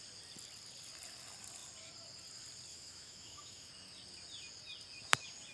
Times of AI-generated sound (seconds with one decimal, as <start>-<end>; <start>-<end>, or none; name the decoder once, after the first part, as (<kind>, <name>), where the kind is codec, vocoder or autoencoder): 2.7-3.7 (autoencoder, DAC-VAE)